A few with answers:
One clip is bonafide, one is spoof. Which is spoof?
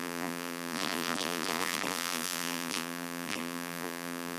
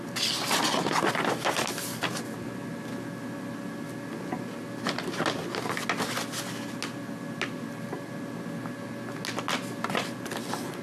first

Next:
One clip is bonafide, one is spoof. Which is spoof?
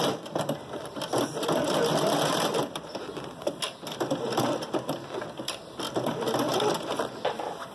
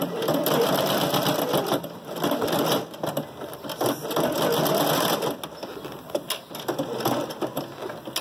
first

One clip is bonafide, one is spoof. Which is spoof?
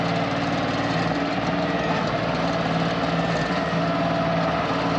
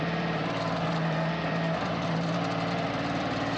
second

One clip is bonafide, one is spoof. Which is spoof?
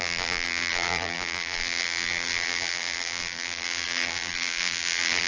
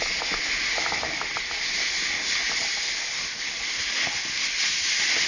first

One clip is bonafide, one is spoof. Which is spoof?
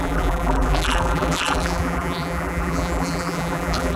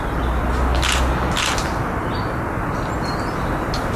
first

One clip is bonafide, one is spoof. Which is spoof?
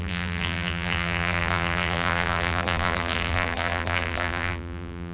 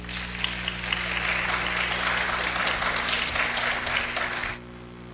first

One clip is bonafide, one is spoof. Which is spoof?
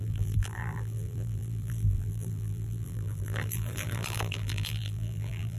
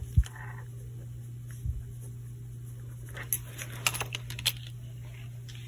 first